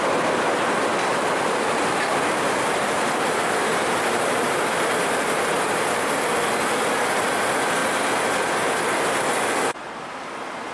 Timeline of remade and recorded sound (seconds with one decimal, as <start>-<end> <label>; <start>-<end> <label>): 0.0-1.1 recorded; 1.1-6.3 remade; 6.3-10.7 recorded